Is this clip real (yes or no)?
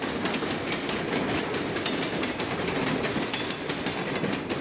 yes